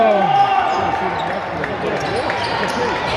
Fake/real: fake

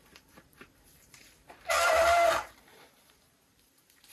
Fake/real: fake